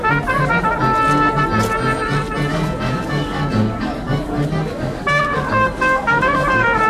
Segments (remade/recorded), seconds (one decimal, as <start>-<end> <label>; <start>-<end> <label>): 0.0-2.5 recorded; 2.5-6.9 remade